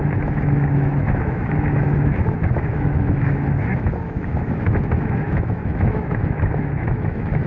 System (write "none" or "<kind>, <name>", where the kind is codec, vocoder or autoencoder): autoencoder, DAC-VAE